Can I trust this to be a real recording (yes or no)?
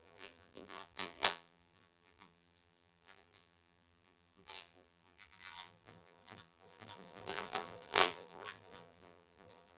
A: no